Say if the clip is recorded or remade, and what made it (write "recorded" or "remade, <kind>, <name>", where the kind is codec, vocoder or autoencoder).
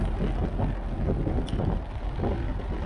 recorded